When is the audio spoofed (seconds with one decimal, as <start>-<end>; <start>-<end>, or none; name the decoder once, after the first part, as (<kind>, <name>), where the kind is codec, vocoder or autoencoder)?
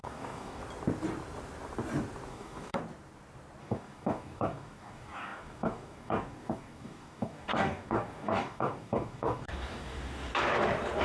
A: 0.0-0.6 (codec, DAC); 2.3-2.8; 3.6-10.3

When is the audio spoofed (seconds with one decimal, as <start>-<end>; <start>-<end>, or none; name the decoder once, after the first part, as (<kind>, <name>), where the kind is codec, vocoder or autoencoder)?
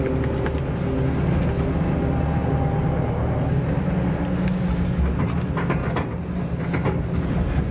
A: none